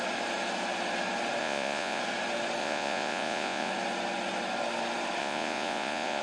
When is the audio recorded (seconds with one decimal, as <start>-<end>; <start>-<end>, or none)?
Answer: 0.0-1.4; 2.0-2.6; 3.7-5.2